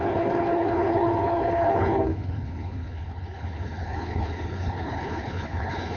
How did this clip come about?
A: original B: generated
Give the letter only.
B